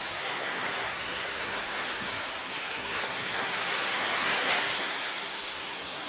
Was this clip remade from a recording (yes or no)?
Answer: yes